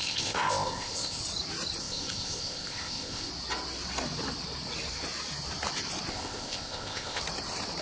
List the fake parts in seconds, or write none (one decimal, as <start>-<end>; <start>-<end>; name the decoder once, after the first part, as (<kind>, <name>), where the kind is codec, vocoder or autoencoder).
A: 0.0-1.2 (codec, ZipCodec); 1.8-3.3; 6.1-7.2